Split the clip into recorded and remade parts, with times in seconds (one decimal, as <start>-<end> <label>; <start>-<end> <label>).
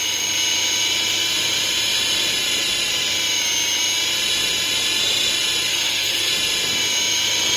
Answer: 0.0-5.7 recorded; 5.7-6.3 remade; 6.3-7.6 recorded